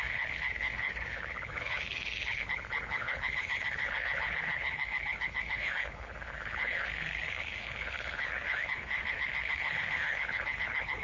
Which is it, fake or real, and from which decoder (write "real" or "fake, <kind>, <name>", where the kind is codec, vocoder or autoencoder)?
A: fake, codec, HILCodec